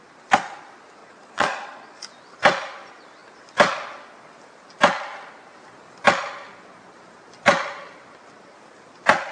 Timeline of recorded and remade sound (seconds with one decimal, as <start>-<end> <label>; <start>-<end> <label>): 0.0-1.0 recorded; 1.0-2.0 remade; 2.0-9.3 recorded